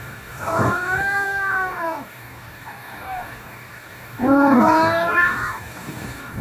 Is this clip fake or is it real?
fake